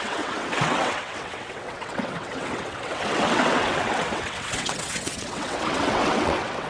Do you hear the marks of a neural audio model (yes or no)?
yes